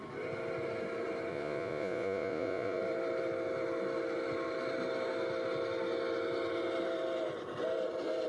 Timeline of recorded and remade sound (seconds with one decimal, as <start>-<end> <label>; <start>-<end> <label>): 0.0-1.3 recorded; 1.3-2.8 remade; 2.8-8.3 recorded